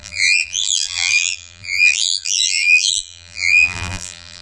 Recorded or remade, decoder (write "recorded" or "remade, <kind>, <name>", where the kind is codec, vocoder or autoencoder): remade, vocoder, BigVGAN v2